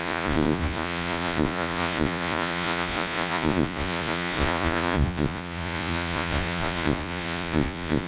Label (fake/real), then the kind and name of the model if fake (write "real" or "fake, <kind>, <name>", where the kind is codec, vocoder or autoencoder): fake, vocoder, Vocos